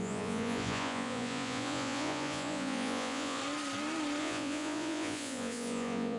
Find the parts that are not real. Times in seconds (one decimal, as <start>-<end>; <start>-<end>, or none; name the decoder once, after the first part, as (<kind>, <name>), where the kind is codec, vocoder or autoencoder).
0.0-3.4 (vocoder, Vocos); 4.2-6.2